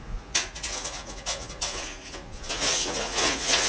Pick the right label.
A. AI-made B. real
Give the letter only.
A